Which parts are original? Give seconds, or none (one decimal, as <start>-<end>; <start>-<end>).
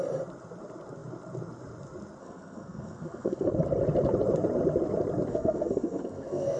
0.0-2.2; 3.5-5.3